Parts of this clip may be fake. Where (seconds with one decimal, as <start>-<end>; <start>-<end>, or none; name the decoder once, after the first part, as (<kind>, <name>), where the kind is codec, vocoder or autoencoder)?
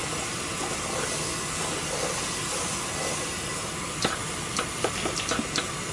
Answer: none